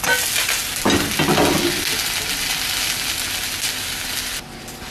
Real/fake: real